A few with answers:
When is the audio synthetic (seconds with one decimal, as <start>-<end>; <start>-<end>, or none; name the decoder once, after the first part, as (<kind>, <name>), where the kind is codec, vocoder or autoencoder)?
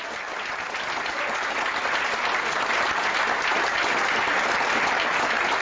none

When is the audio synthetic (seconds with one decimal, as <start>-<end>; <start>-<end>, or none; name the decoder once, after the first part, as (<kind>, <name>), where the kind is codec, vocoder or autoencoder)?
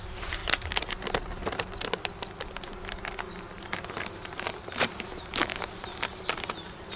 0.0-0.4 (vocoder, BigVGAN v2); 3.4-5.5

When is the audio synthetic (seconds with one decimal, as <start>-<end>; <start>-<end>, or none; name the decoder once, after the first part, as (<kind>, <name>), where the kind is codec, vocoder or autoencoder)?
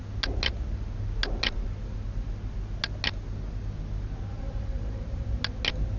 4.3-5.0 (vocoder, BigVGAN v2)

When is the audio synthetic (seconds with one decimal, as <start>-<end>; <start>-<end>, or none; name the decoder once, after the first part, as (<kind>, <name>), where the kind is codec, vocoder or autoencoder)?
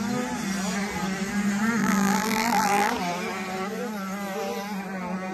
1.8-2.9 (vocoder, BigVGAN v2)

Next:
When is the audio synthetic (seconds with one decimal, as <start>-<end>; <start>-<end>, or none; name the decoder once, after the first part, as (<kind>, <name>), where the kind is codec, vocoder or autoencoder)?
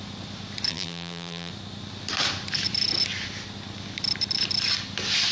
0.7-1.5 (vocoder, BigVGAN v2)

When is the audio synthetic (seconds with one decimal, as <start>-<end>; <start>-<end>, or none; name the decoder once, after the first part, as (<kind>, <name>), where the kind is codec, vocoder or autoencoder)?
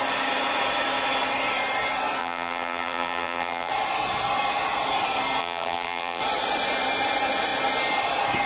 2.2-3.7 (vocoder, BigVGAN v2); 5.4-6.2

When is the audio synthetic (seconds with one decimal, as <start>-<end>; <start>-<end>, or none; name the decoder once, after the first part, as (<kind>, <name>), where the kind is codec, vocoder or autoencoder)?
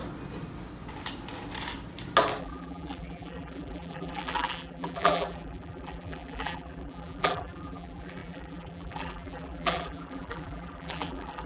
2.4-11.5 (vocoder, BigVGAN v2)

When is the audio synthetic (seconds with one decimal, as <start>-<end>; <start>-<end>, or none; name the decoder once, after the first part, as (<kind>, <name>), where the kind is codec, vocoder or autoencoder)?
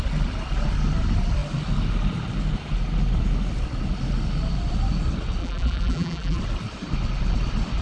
5.4-6.4 (vocoder, BigVGAN v2)